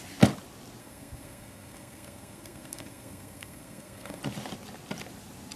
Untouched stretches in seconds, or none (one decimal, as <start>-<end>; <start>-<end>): 0.0-0.8; 4.2-5.6